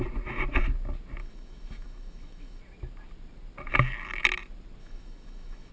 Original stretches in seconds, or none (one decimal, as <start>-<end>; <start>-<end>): 0.0-1.2; 2.6-4.8